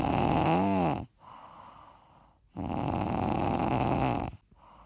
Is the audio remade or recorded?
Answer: recorded